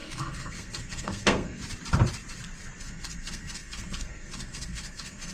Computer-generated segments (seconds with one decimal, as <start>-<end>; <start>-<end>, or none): 0.0-1.6; 2.8-5.3